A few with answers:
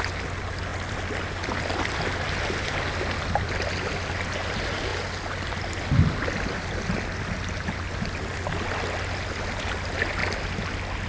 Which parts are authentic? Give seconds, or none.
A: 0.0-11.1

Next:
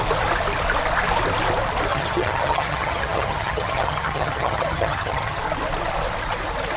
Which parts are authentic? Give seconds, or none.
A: 0.0-1.9; 5.4-6.8

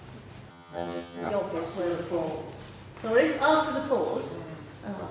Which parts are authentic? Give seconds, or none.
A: 0.0-0.5; 1.3-5.1

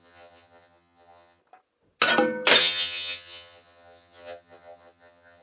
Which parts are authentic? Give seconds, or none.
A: 1.4-2.6

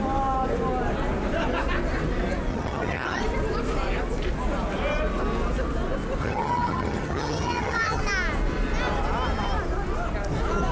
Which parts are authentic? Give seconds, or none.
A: 0.0-2.5; 3.2-6.2; 8.0-10.7